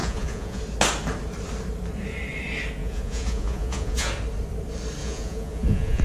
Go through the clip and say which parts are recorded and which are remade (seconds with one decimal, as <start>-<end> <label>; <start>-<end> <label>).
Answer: 0.0-0.6 remade; 0.6-2.8 recorded; 2.8-4.1 remade; 4.1-5.0 recorded; 5.0-6.0 remade

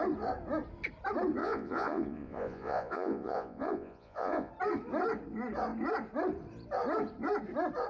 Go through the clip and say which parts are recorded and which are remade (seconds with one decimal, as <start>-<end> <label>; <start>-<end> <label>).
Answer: 0.0-1.4 recorded; 1.4-4.5 remade; 4.5-7.9 recorded